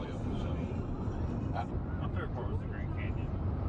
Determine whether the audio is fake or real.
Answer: real